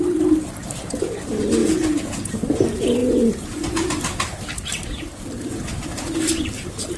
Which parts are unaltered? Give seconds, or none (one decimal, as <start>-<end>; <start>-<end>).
0.0-1.6; 2.3-7.0